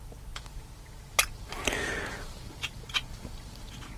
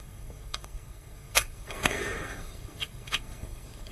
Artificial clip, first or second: second